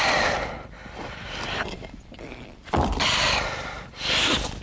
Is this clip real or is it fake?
fake